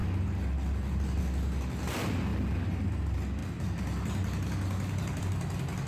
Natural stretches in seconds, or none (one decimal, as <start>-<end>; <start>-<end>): 0.0-5.9